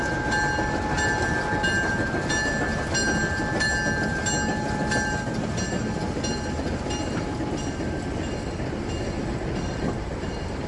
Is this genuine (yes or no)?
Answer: yes